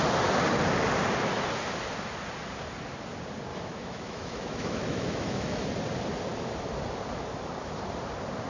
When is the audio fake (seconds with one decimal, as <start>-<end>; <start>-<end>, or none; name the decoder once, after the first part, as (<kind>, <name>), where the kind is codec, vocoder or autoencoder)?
3.5-5.7 (autoencoder, DAC-VAE)

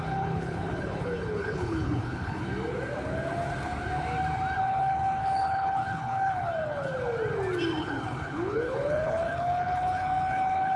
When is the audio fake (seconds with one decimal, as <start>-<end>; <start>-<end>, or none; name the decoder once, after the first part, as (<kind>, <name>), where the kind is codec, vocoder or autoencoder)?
0.0-2.5 (codec, HILCodec); 4.6-6.9; 7.8-10.8

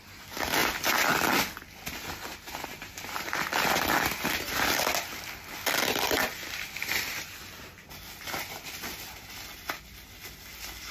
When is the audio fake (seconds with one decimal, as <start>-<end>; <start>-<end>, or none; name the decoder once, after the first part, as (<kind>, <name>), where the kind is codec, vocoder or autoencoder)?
2.8-3.4 (vocoder, BigVGAN v2)

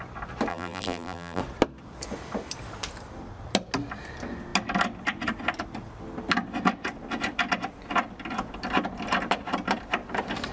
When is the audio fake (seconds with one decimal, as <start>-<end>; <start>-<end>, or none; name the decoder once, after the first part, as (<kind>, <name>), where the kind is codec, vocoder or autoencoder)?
0.5-1.4 (vocoder, BigVGAN v2)

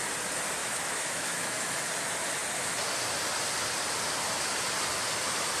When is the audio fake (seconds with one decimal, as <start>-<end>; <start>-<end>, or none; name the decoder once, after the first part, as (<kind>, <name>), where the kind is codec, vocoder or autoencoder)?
0.6-1.8 (autoencoder, DAC-VAE)